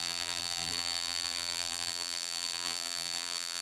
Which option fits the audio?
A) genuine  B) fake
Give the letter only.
B